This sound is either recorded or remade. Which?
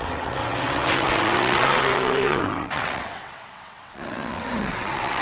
remade